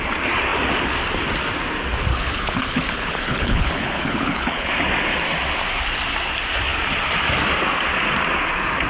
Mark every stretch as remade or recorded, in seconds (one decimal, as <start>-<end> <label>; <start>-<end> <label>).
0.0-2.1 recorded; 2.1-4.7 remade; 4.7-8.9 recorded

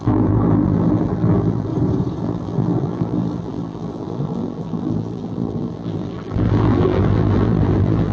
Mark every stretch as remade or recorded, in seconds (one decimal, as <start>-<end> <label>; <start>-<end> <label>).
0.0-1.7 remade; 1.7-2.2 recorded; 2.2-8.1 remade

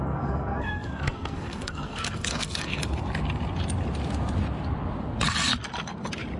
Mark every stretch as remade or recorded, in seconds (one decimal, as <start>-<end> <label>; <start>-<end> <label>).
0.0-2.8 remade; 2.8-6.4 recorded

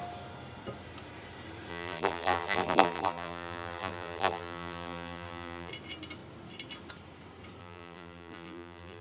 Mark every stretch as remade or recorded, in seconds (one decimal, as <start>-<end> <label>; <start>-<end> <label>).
0.0-1.7 recorded; 1.7-5.7 remade; 5.7-7.6 recorded; 7.6-9.0 remade